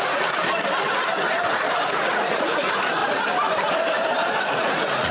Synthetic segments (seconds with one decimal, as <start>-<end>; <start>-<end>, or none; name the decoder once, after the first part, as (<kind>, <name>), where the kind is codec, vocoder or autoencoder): 0.0-0.4 (vocoder, Vocos); 1.4-3.0; 4.4-5.1